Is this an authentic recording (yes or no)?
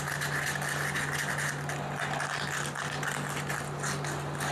yes